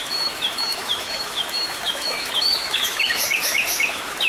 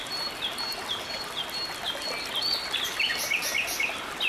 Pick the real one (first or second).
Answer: second